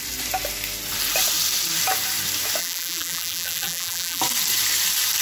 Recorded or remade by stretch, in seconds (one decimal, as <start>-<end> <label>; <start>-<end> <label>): 0.0-2.6 recorded; 2.6-4.2 remade; 4.2-5.2 recorded